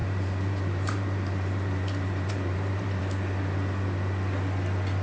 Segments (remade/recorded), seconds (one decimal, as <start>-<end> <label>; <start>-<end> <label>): 0.0-3.0 remade; 3.0-5.0 recorded